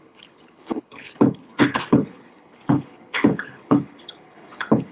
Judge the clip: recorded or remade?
remade